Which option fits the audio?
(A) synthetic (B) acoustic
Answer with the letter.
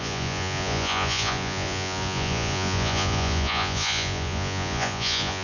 A